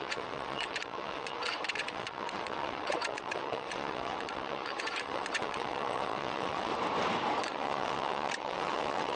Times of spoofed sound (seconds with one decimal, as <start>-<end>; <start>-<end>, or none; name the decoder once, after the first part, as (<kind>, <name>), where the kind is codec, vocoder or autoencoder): 0.0-6.7 (vocoder, WaveNeXt); 7.4-9.2